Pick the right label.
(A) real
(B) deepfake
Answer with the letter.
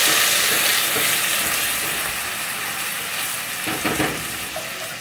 A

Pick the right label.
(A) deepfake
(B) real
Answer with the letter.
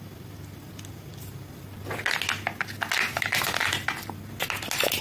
B